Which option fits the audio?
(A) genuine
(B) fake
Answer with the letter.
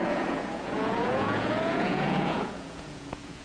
B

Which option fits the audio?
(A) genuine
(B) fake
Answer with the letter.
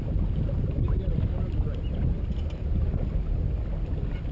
A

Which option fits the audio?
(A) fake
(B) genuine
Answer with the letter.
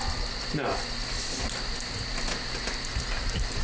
B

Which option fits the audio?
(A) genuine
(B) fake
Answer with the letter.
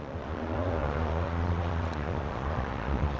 B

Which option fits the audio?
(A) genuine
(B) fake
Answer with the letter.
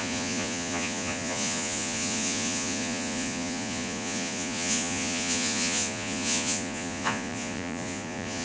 B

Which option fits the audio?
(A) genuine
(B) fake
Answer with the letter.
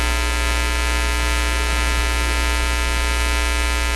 A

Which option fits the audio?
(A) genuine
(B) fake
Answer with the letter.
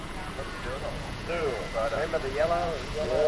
B